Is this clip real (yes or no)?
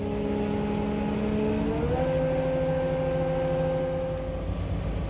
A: yes